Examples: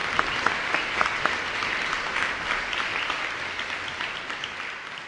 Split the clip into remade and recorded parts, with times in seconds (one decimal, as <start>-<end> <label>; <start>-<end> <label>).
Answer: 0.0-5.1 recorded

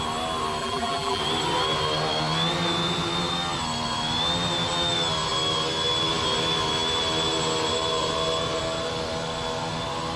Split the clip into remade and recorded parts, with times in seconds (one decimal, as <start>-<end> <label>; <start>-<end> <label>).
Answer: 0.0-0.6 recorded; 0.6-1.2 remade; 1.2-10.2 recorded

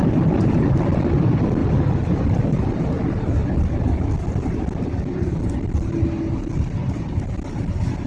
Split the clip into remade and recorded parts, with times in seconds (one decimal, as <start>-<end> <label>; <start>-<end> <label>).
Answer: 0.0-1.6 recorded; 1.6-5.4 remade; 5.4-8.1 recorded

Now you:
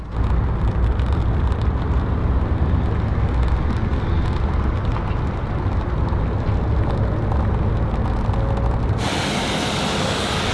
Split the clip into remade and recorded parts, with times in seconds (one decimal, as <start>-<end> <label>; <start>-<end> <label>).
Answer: 0.0-3.9 recorded; 3.9-7.7 remade; 7.7-10.5 recorded